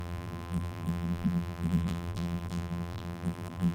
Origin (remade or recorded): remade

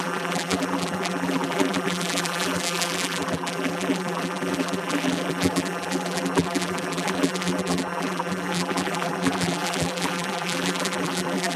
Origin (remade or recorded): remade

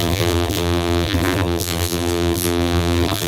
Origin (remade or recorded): remade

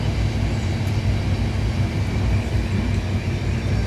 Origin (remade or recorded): recorded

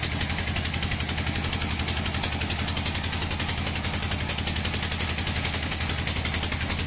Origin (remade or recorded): recorded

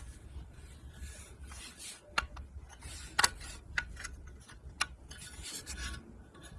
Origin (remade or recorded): recorded